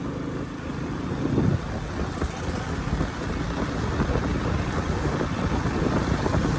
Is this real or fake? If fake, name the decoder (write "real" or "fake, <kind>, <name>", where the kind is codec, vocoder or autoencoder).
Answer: real